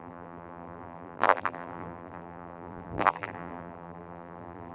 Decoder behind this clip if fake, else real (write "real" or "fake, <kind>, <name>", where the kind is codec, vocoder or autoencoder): fake, vocoder, BigVGAN v2